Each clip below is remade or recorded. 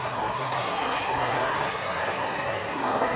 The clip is remade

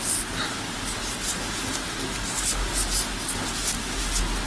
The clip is recorded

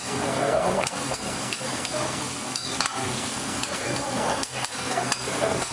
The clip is remade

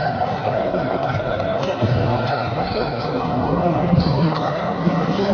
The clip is remade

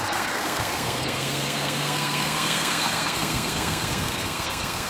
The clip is remade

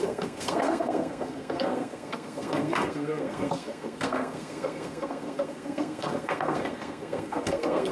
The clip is remade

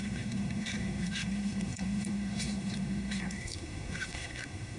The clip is remade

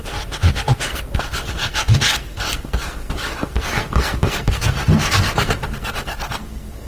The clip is remade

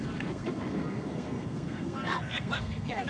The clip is remade